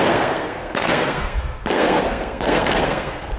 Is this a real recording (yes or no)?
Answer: no